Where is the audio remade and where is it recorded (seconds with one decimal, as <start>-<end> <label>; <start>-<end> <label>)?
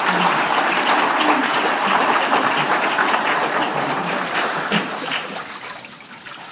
0.0-1.4 recorded; 1.4-2.8 remade; 2.8-3.4 recorded; 3.4-5.4 remade; 5.4-6.5 recorded